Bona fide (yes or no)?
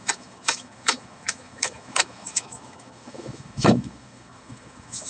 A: no